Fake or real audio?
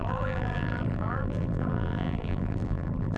fake